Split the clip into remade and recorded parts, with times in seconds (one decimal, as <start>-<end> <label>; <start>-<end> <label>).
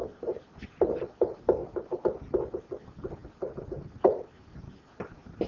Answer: 0.0-1.6 remade; 1.6-4.5 recorded; 4.5-5.5 remade